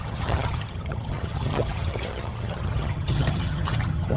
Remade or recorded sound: remade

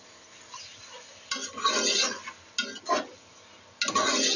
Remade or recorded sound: recorded